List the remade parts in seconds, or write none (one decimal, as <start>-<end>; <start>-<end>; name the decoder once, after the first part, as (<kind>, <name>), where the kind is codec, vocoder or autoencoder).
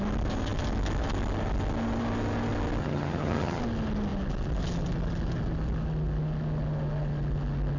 2.8-3.6 (vocoder, HiFi-GAN)